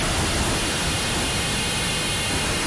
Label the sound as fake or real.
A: real